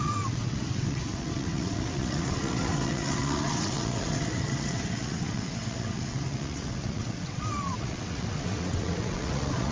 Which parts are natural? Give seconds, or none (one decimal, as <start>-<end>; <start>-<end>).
none